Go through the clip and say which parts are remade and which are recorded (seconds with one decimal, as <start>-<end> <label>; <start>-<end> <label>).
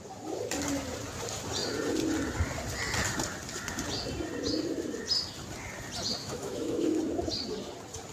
0.0-6.2 recorded; 6.2-7.0 remade; 7.0-8.1 recorded